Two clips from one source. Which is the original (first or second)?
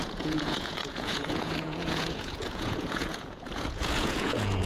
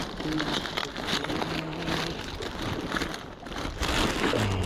second